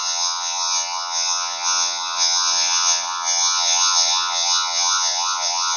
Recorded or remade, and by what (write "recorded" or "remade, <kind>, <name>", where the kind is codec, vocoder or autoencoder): remade, vocoder, Vocos